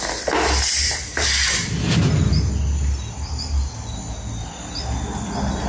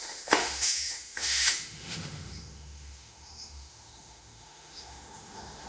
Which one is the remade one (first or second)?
second